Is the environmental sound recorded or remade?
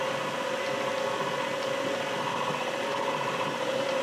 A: recorded